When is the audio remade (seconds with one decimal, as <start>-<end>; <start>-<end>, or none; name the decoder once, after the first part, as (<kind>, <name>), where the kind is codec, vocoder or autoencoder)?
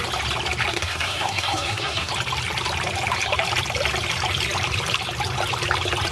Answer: 0.7-2.1 (codec, SNAC)